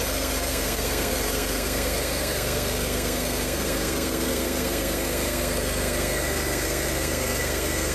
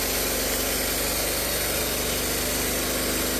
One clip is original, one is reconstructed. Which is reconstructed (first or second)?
first